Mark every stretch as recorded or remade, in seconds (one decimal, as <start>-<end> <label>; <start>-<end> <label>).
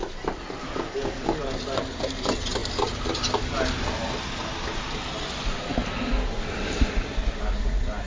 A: 0.0-0.6 recorded; 0.6-1.4 remade; 1.4-8.1 recorded